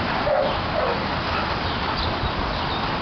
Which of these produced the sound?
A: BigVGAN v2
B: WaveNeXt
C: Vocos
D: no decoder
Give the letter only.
D